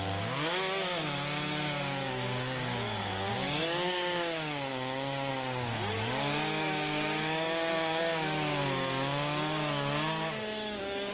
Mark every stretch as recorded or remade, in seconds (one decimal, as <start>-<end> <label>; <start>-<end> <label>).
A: 0.0-11.1 remade

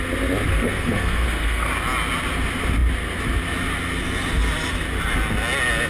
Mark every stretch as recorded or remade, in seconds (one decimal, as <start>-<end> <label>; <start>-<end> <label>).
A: 0.0-0.5 recorded; 0.5-1.7 remade; 1.7-5.9 recorded

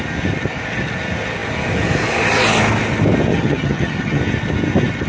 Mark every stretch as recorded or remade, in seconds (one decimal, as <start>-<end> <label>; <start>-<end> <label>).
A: 0.0-3.3 recorded; 3.3-4.2 remade; 4.2-5.1 recorded

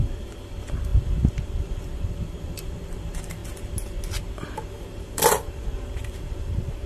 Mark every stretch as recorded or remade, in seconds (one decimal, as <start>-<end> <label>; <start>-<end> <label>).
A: 0.0-3.4 remade; 3.4-4.2 recorded; 4.2-6.9 remade